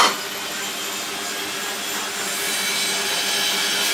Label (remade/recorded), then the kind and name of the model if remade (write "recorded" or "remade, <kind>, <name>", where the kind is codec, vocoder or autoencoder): recorded